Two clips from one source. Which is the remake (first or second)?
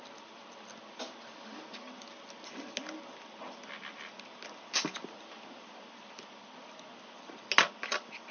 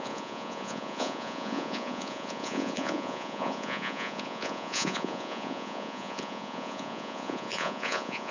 second